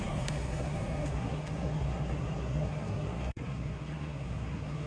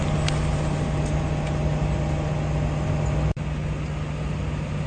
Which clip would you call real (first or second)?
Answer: second